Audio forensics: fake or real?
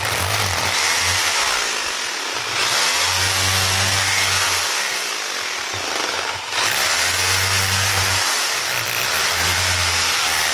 real